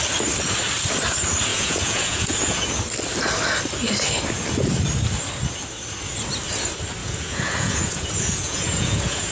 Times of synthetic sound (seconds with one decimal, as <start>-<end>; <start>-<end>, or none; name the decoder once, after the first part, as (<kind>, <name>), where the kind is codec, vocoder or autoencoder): 1.5-2.7 (vocoder, Vocos); 7.0-9.3